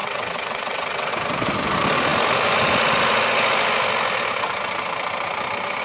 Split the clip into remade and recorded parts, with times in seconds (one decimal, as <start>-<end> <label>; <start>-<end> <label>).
0.0-1.1 remade; 1.1-5.8 recorded